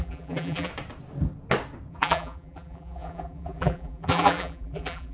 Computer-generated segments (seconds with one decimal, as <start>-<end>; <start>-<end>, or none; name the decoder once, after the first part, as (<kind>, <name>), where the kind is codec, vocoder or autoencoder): 0.0-0.7 (vocoder, BigVGAN v2); 1.9-5.1